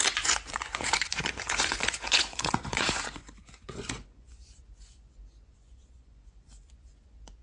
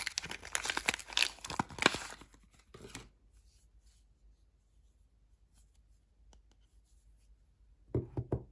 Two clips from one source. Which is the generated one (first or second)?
first